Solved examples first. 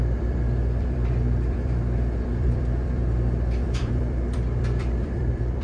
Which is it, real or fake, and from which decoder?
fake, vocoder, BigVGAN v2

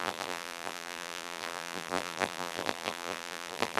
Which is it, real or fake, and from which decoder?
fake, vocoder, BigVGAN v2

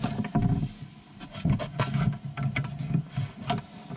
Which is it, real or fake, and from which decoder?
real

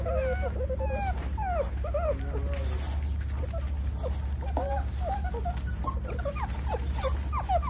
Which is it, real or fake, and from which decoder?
real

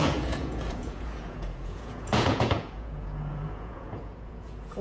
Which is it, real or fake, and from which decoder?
fake, vocoder, Vocos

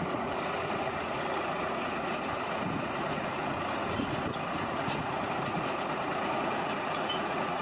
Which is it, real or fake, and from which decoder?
fake, vocoder, Vocos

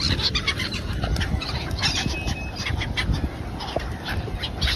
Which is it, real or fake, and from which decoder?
real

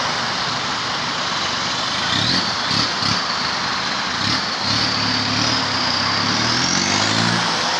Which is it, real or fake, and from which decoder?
real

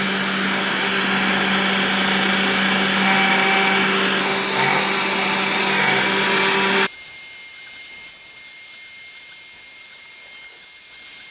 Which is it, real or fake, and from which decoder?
real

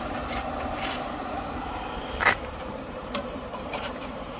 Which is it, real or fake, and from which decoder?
fake, vocoder, BigVGAN v2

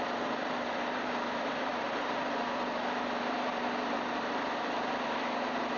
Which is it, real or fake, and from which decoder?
fake, vocoder, BigVGAN v2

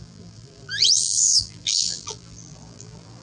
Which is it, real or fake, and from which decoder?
fake, vocoder, BigVGAN v2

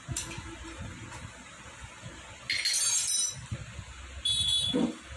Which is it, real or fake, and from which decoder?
real